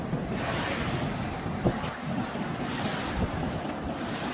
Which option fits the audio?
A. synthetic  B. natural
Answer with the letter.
B